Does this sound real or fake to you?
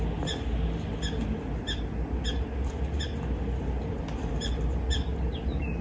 real